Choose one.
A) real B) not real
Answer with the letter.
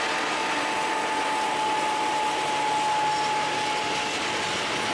A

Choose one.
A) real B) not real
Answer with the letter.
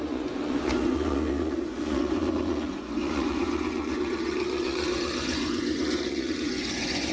B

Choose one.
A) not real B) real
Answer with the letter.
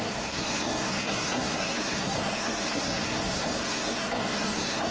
A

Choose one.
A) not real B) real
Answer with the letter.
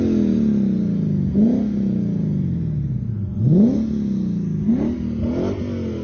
B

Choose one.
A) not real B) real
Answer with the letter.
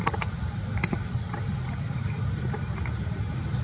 A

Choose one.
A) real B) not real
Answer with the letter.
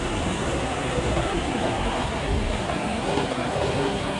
B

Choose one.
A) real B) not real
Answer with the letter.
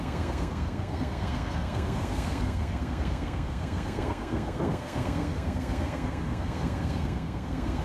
B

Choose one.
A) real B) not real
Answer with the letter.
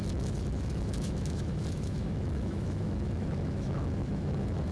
B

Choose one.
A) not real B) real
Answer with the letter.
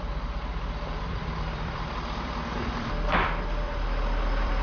A